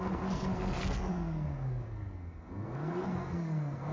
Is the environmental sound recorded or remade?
remade